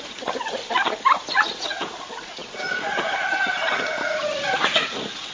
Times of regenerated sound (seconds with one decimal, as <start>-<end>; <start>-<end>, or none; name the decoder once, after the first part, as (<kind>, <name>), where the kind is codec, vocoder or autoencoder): 0.0-0.6 (vocoder, Vocos); 1.3-5.3